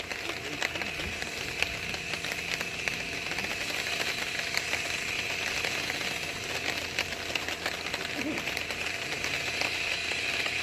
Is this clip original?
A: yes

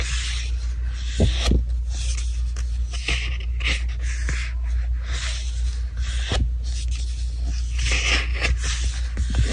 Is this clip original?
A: yes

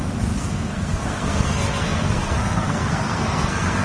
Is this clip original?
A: no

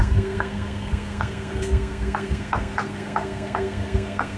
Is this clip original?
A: no